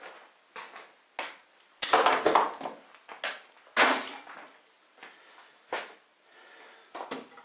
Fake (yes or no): no